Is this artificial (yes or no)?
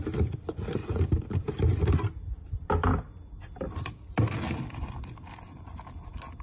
no